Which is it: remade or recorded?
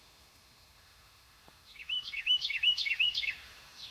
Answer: remade